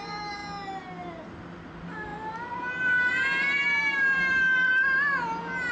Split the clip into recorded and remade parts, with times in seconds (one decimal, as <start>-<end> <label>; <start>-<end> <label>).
0.0-5.7 recorded